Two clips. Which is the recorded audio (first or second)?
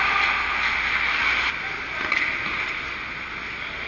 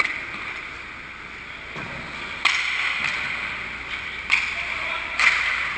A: first